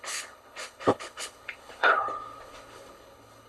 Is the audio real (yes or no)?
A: no